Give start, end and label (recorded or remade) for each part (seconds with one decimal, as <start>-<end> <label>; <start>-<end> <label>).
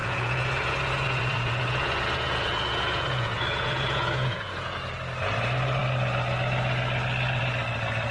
0.0-4.9 remade; 4.9-8.1 recorded